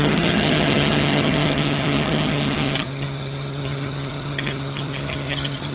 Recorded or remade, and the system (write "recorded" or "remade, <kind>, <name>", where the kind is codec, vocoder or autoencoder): remade, vocoder, HiFi-GAN